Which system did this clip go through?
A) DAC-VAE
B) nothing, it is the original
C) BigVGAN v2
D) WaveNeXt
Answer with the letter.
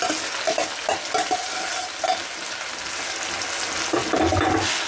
B